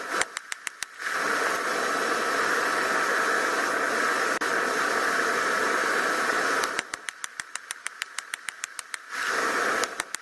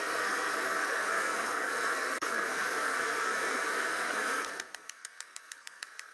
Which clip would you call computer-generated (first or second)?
second